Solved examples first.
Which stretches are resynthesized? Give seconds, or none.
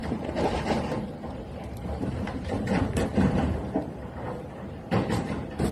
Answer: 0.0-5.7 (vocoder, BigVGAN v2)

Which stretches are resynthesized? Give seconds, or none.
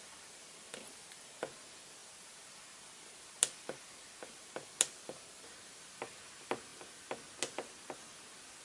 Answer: none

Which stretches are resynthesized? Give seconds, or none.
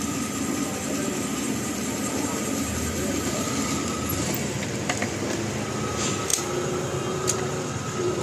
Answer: 1.3-3.0 (vocoder, BigVGAN v2)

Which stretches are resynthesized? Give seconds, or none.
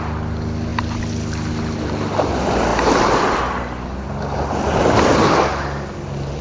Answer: 0.7-1.5 (vocoder, BigVGAN v2)